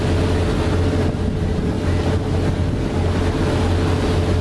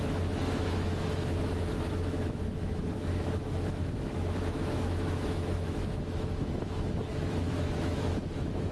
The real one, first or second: first